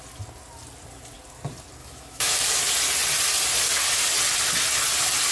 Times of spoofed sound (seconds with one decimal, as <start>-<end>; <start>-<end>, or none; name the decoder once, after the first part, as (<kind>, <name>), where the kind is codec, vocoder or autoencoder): 1.8-2.4 (autoencoder, DAC-VAE)